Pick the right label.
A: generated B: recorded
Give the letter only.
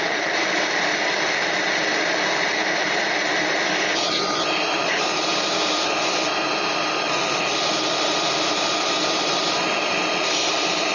B